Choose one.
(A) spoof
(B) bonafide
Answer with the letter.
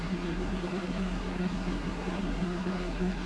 A